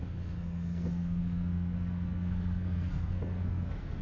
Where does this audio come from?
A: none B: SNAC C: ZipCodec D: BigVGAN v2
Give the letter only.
B